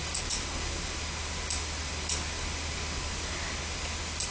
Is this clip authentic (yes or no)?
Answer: yes